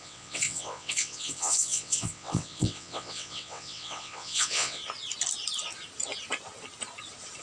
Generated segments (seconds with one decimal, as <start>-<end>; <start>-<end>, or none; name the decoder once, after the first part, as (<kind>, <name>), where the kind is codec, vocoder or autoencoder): 0.0-4.8 (vocoder, WaveNeXt)